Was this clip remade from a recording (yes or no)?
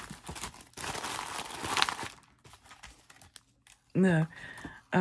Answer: no